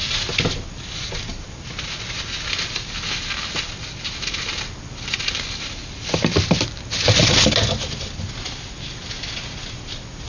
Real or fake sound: real